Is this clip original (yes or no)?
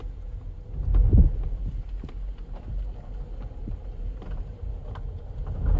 yes